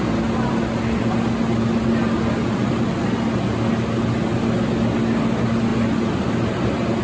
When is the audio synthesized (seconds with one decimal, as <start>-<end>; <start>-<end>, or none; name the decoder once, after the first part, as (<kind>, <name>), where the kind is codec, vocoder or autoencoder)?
none